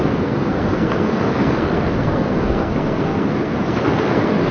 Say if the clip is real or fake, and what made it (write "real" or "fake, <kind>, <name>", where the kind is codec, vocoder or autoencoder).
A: fake, codec, SNAC